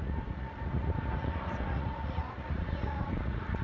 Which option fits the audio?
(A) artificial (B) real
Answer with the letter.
A